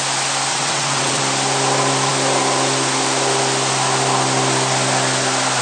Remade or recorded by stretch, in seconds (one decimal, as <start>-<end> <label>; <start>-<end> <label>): 0.0-0.5 recorded; 0.5-1.2 remade; 1.2-5.6 recorded